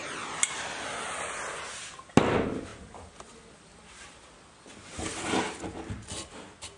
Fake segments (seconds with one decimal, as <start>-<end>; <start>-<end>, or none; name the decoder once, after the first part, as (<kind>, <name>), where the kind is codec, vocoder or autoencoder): none